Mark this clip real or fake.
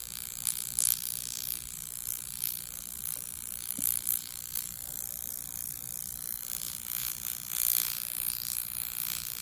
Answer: fake